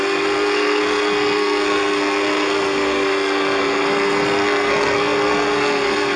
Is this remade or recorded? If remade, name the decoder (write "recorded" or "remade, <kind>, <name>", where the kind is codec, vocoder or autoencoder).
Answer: remade, codec, SNAC